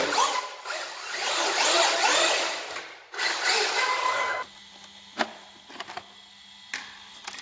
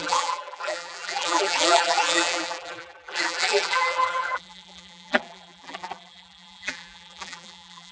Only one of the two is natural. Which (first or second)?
first